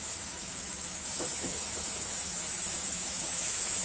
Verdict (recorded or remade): remade